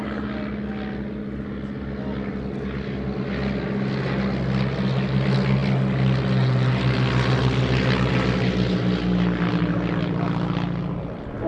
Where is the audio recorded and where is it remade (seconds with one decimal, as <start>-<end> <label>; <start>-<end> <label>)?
0.0-11.5 recorded